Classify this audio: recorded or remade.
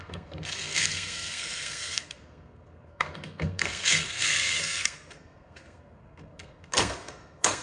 remade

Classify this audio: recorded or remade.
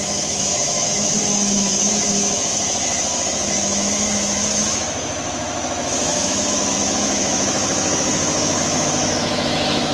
remade